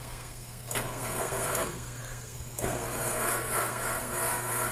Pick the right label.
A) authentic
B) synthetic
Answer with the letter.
B